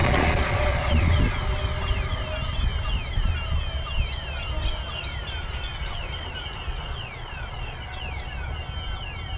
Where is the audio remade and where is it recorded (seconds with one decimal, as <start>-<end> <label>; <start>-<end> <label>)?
0.0-1.2 remade; 1.2-6.7 recorded; 6.7-8.0 remade; 8.0-9.4 recorded